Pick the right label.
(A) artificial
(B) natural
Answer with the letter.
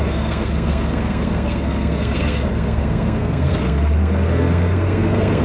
A